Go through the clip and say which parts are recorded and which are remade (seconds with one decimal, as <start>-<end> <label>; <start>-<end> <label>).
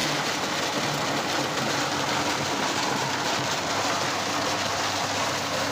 0.0-5.7 recorded